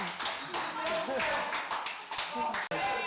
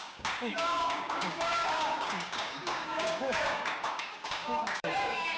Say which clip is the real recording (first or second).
first